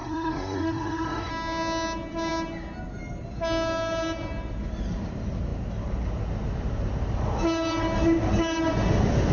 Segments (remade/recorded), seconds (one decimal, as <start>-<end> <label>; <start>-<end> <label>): 0.0-1.3 remade; 1.3-9.3 recorded